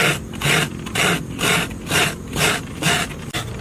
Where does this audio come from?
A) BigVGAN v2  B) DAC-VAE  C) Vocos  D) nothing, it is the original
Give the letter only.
A